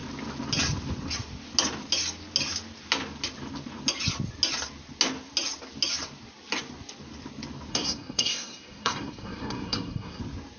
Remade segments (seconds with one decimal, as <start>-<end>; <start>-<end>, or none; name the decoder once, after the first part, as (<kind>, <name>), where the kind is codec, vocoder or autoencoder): 7.7-10.2 (codec, SNAC)